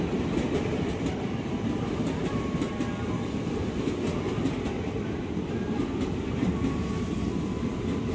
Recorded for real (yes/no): yes